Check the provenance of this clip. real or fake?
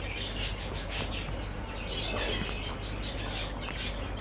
real